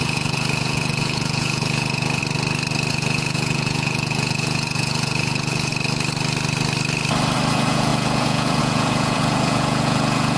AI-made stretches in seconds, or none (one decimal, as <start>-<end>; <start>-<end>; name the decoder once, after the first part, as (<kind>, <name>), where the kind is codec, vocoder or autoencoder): 0.0-2.2 (vocoder, Vocos); 2.9-5.7; 7.5-10.4